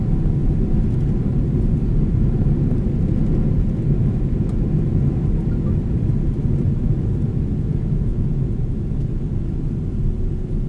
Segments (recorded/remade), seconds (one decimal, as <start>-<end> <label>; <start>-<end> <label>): 0.0-8.1 recorded; 8.1-8.7 remade; 8.7-10.7 recorded